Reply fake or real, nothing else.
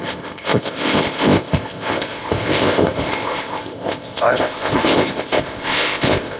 fake